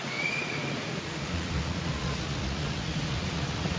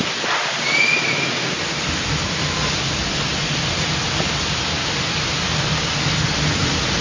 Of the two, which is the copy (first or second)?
first